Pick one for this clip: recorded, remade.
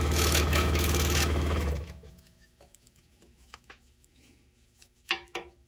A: remade